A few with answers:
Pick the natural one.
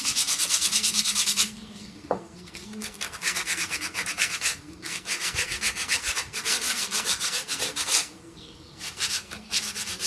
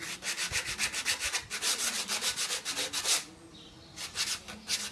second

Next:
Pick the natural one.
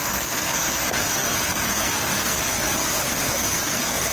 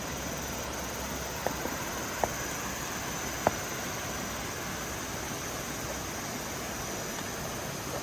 second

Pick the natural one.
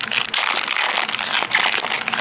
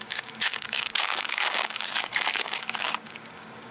first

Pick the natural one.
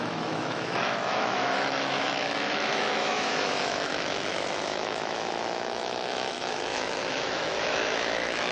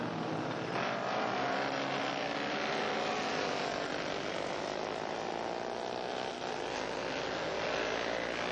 second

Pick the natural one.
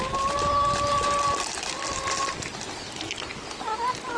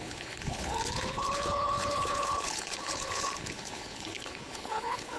first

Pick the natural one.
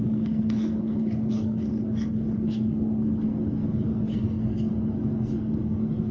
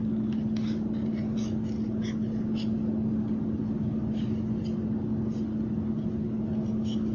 second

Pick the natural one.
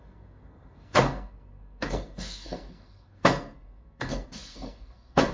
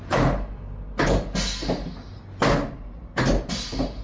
second